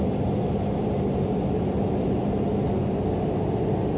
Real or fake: real